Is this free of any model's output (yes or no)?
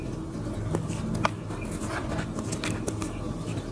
yes